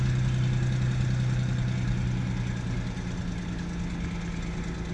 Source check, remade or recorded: recorded